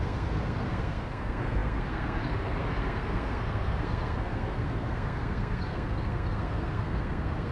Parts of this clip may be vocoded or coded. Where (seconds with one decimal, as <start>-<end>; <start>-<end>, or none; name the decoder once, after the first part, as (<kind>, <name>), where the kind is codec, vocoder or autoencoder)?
0.0-7.5 (codec, SNAC)